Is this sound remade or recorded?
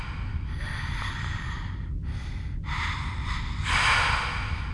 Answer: recorded